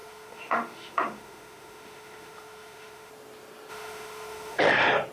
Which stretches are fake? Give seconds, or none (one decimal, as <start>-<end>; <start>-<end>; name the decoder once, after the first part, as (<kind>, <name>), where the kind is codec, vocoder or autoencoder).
0.0-3.1 (autoencoder, DAC-VAE); 3.7-4.6